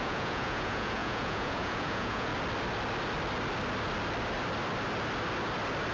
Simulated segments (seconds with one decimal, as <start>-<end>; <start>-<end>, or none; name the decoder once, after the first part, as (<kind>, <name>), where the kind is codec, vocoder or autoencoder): 0.0-2.3 (vocoder, Vocos)